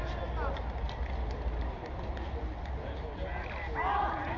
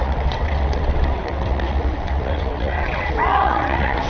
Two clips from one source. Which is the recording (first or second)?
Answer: first